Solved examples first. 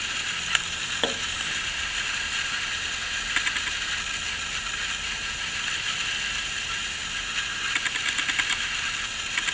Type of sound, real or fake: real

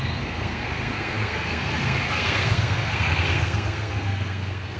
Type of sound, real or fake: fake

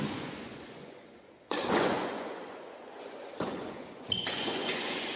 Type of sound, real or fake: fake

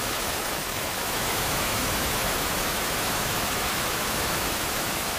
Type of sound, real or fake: fake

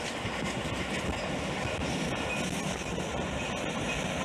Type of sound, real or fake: real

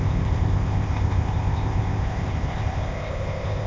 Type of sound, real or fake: fake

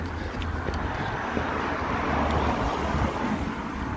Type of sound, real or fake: real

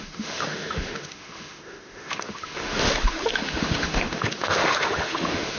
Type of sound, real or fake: fake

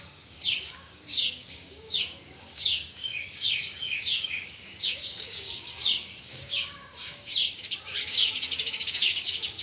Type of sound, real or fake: fake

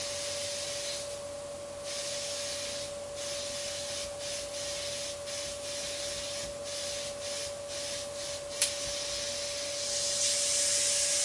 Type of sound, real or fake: real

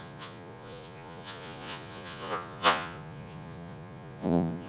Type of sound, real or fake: fake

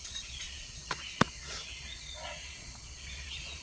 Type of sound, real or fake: fake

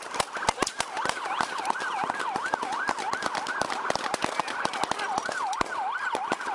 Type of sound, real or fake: real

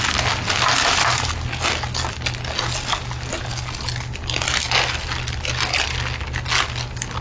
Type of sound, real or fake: real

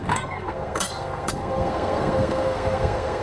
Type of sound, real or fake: fake